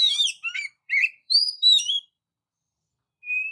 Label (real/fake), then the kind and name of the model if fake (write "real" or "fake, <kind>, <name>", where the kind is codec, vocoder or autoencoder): fake, vocoder, BigVGAN v2